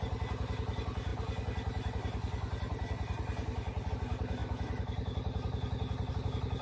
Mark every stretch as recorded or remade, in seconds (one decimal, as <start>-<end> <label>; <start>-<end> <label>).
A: 0.0-6.6 recorded